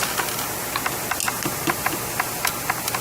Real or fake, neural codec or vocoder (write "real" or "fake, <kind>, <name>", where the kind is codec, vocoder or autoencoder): real